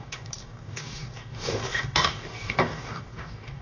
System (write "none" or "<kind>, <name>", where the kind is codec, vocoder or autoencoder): codec, DAC